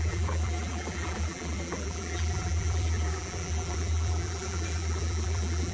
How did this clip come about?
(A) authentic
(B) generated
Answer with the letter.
B